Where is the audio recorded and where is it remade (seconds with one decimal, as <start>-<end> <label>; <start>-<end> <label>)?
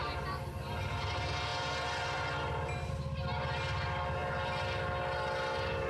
0.0-5.9 recorded